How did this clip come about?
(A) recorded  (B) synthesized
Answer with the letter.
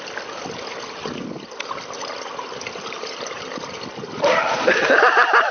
A